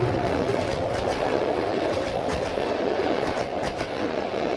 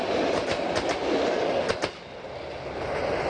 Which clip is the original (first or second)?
second